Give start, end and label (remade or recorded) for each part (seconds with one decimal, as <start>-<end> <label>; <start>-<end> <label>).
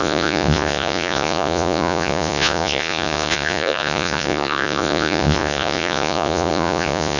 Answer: 0.0-7.2 remade